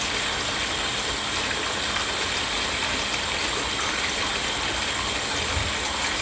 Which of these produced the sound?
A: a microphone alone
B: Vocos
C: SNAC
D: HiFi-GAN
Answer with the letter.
A